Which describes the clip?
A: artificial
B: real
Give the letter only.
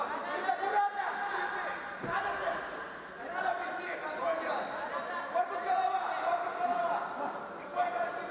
B